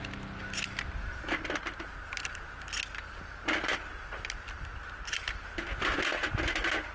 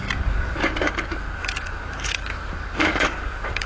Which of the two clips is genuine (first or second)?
first